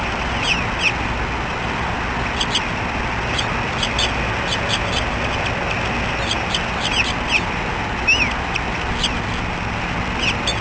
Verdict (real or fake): real